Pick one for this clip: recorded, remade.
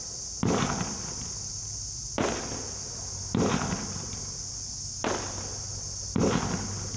recorded